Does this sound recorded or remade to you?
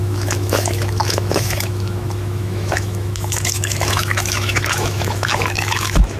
remade